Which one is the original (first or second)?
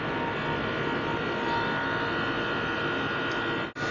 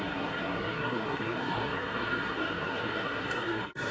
first